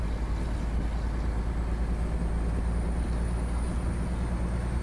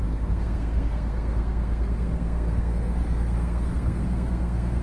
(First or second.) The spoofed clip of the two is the second